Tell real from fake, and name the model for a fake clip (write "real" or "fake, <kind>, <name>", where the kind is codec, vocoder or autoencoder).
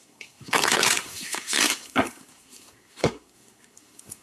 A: fake, codec, SNAC